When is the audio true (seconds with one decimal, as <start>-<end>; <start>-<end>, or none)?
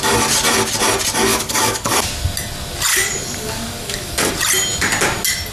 0.0-1.3; 2.1-2.9; 4.3-5.5